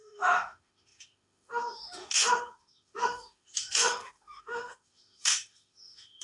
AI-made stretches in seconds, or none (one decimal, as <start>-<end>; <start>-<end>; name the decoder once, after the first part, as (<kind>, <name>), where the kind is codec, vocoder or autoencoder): 0.0-6.2 (autoencoder, DAC-VAE)